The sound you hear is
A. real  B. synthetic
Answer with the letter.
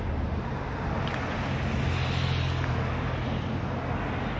A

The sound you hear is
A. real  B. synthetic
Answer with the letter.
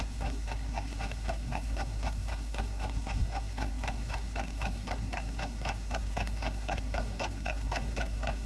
B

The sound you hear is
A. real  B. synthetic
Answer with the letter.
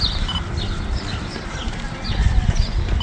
A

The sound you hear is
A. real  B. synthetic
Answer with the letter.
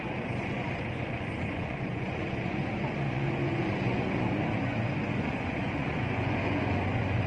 B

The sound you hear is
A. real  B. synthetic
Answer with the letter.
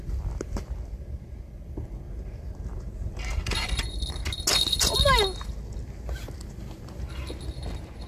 A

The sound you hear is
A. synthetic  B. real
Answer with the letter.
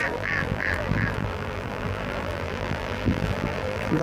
A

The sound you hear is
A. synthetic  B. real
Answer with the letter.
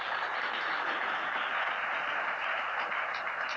A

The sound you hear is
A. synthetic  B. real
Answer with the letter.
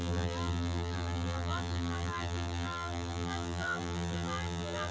A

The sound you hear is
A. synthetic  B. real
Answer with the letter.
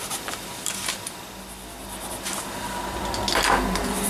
B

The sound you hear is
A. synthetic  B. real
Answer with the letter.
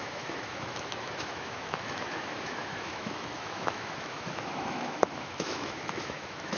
A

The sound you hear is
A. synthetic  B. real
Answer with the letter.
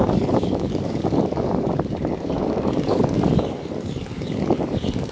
A